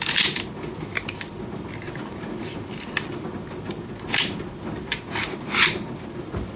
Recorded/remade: remade